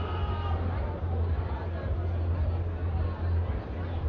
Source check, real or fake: real